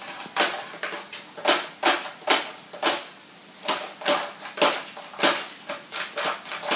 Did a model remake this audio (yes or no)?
no